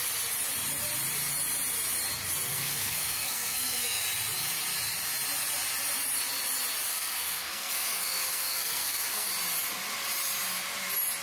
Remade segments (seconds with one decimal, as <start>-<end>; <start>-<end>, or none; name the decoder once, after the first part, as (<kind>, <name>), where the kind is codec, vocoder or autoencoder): 2.5-4.0 (codec, SNAC); 6.9-9.3